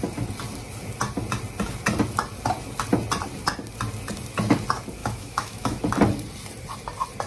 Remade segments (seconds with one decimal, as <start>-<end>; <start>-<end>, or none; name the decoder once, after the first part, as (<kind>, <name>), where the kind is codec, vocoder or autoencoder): 5.0-5.8 (autoencoder, DAC-VAE)